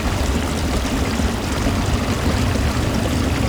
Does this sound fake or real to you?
real